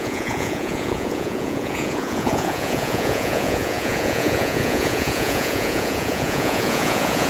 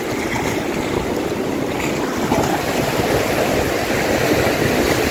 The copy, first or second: first